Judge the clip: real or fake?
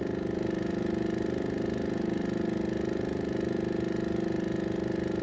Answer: real